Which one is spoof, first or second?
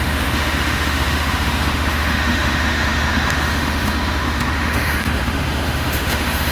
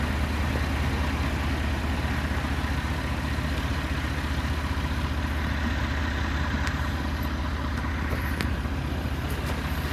first